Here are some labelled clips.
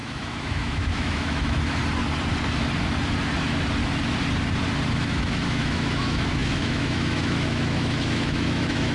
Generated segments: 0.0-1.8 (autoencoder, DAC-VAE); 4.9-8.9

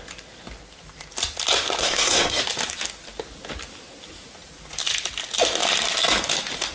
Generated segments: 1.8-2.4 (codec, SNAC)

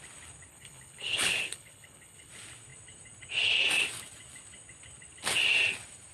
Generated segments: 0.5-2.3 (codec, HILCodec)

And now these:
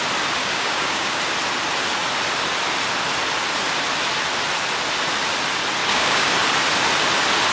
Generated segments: 0.4-1.2 (codec, DAC); 5.8-6.3